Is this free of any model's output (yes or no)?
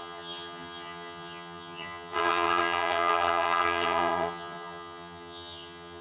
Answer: no